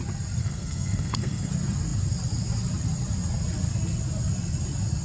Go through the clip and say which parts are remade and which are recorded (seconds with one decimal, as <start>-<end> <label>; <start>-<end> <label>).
0.0-0.4 recorded; 0.4-1.5 remade; 1.5-5.0 recorded